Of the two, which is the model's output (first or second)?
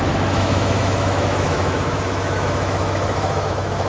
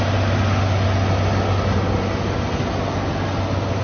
first